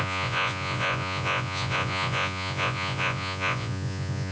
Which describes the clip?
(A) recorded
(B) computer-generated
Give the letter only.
B